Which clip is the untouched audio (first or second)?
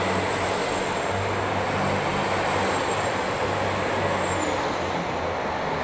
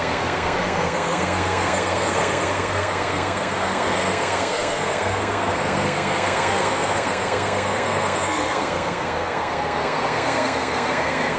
first